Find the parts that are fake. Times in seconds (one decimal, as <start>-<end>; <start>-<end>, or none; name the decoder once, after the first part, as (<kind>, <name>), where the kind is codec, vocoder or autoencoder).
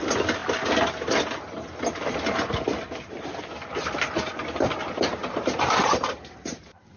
none